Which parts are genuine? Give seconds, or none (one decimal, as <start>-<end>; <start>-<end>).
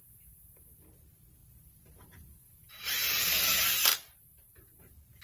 0.0-1.4; 2.5-3.9; 4.8-5.2